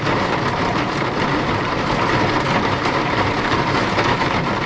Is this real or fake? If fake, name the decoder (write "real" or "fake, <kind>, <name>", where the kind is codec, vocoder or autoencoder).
fake, vocoder, BigVGAN v2